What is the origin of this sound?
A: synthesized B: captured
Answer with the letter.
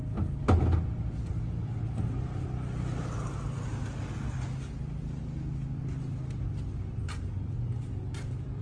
B